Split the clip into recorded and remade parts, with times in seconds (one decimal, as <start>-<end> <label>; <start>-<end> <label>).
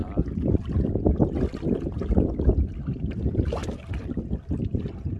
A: 0.0-5.2 recorded